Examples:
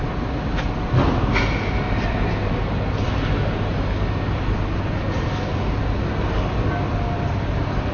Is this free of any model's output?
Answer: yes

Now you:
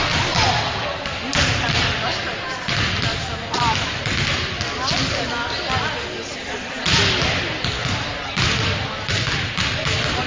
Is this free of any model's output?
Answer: yes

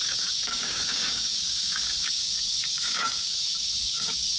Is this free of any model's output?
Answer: no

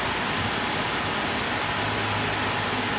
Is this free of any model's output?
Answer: yes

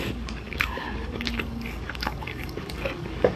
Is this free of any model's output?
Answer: no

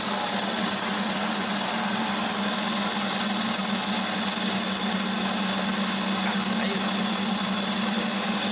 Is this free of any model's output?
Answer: yes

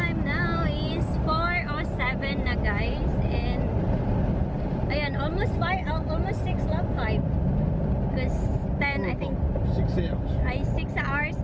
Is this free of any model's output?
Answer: yes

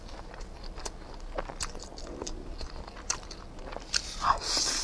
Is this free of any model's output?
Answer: yes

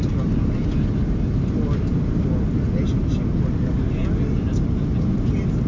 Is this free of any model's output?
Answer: yes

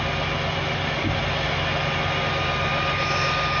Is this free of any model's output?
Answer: yes